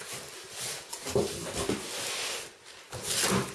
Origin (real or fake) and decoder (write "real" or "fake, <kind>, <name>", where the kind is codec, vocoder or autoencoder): real